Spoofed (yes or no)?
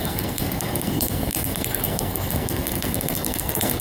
yes